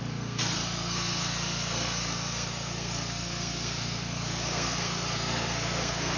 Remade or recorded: remade